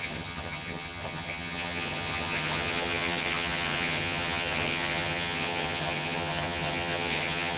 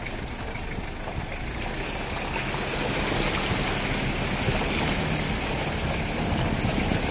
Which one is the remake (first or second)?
first